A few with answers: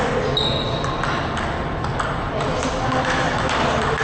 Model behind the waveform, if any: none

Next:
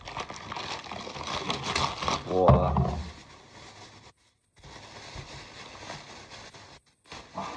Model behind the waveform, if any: none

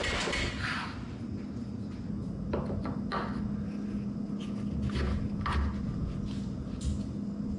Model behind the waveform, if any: none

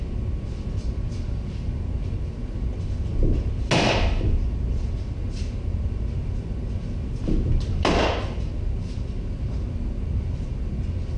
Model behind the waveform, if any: none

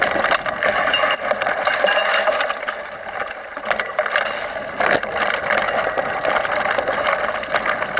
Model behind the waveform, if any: none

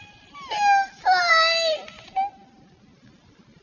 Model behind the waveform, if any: none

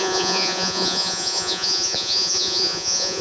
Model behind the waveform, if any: vocoder, Vocos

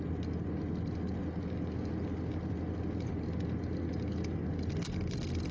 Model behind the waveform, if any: none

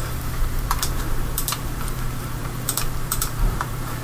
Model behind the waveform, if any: vocoder, BigVGAN v2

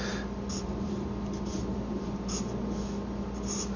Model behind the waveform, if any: none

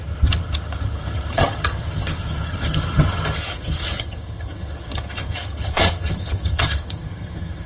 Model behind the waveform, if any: vocoder, HiFi-GAN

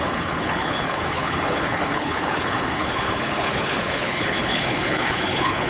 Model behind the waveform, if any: codec, HILCodec